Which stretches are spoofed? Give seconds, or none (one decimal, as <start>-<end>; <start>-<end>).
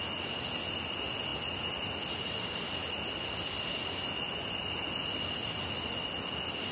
none